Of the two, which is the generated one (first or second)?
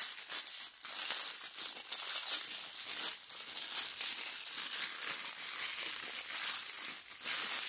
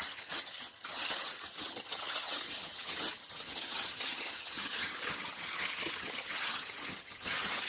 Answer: second